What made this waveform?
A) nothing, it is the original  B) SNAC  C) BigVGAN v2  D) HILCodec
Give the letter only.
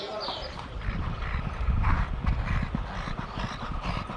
A